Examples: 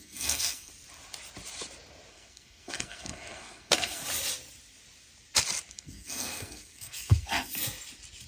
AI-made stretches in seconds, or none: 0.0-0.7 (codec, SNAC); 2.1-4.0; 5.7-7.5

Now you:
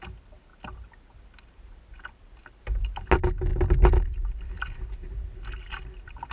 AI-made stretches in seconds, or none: none

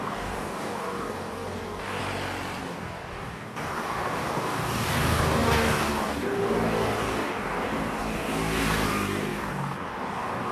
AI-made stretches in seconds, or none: 0.0-2.0 (codec, DAC); 2.6-10.5

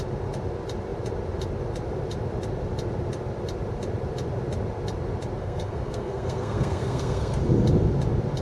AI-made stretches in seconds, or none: 5.4-7.4 (codec, SNAC)